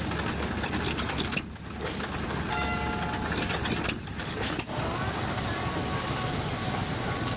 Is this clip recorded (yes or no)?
yes